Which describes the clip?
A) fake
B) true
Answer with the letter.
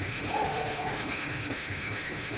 A